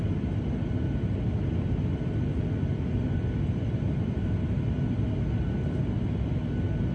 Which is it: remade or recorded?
recorded